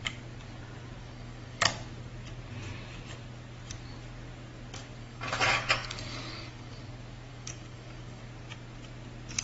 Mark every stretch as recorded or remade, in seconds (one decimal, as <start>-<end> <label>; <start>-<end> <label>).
0.0-1.0 recorded; 1.0-1.6 remade; 1.6-5.0 recorded; 5.0-6.8 remade; 6.8-7.3 recorded; 7.3-8.2 remade; 8.2-9.4 recorded